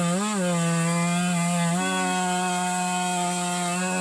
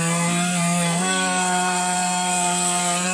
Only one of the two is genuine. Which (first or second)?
first